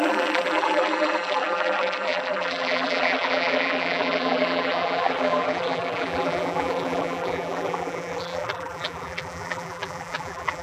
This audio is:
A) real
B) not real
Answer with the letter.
B